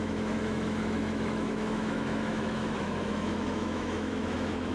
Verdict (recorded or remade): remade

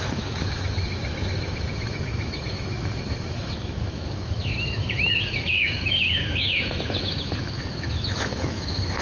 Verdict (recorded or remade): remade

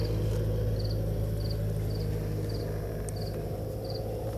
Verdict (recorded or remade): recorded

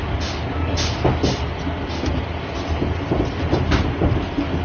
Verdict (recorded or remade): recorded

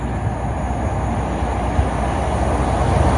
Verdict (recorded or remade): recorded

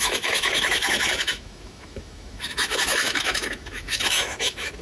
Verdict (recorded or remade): remade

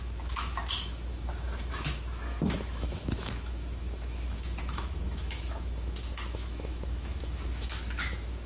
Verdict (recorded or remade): remade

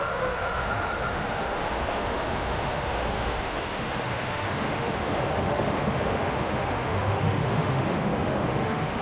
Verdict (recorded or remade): remade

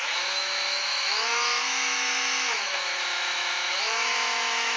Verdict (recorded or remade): remade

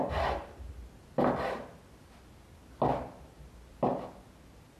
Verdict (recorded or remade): recorded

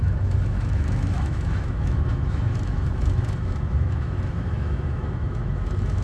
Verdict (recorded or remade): remade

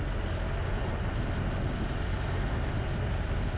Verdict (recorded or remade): recorded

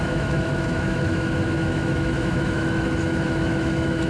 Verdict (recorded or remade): remade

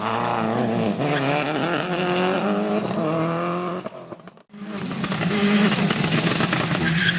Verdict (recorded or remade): recorded